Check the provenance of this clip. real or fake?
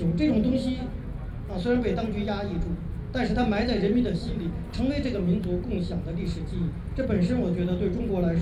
real